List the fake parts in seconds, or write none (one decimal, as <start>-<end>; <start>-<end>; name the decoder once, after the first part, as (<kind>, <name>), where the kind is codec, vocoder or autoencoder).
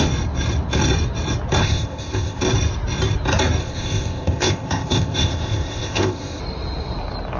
1.6-2.4 (codec, ZipCodec); 3.6-6.4